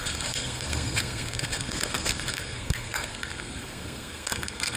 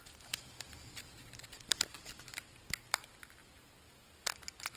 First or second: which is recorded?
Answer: second